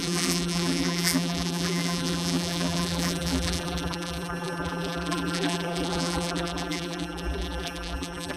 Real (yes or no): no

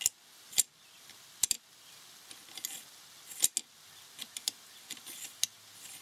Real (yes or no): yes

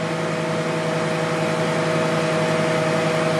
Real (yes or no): yes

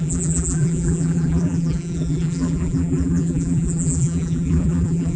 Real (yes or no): no